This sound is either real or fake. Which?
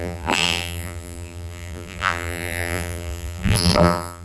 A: fake